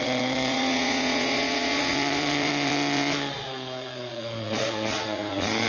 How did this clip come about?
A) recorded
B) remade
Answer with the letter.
B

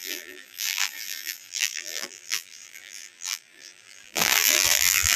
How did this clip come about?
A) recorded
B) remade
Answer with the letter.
B